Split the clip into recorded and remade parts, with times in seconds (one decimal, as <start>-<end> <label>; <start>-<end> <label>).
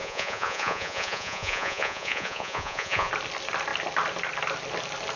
0.0-3.1 remade; 3.1-5.2 recorded